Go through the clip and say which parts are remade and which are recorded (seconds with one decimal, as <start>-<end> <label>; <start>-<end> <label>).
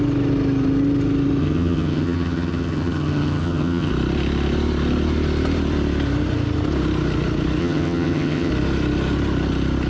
0.0-1.4 recorded; 1.4-3.9 remade; 3.9-7.6 recorded; 7.6-8.5 remade; 8.5-9.9 recorded